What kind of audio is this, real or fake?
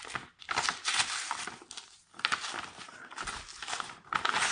real